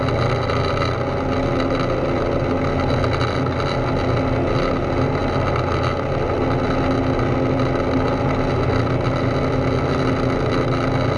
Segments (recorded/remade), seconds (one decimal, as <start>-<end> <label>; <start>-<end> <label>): 0.0-11.2 recorded